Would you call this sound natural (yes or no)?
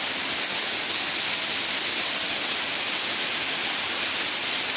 yes